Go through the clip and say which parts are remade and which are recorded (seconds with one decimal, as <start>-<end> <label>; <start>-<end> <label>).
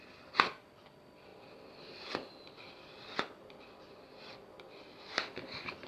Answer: 0.0-5.9 recorded